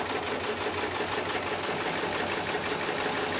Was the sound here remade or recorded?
recorded